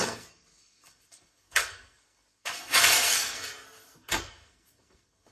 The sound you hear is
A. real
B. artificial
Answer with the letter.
B